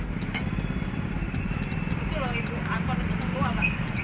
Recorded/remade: recorded